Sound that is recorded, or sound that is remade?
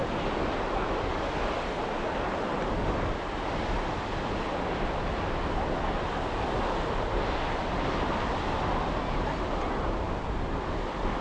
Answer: recorded